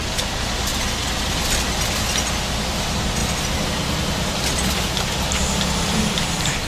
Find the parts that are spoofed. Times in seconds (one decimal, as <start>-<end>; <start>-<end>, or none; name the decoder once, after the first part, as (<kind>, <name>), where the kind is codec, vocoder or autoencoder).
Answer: 0.0-0.7 (vocoder, BigVGAN v2); 2.7-3.2; 5.9-6.7